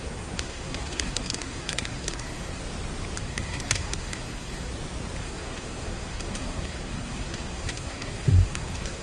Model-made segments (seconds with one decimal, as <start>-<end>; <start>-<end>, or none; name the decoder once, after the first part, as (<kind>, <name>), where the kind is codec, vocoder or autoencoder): 0.0-2.6 (codec, SNAC); 3.2-4.7; 5.2-9.0